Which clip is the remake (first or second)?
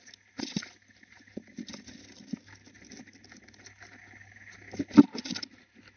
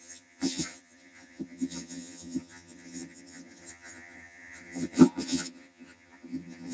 second